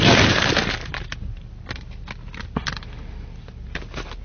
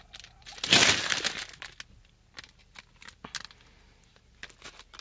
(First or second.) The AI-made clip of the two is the first